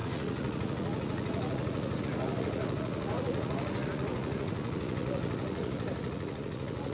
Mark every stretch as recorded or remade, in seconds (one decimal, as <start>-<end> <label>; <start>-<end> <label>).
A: 0.0-6.9 remade